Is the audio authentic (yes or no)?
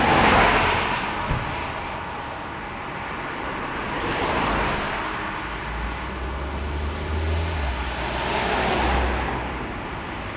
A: yes